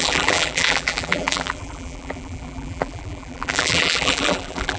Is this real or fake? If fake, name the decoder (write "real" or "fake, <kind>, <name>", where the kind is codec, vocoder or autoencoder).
fake, vocoder, BigVGAN v2